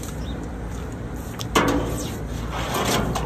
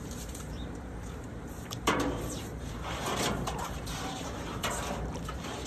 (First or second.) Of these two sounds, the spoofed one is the second